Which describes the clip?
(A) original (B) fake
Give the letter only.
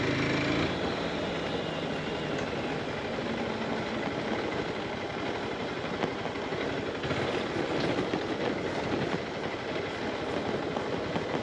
A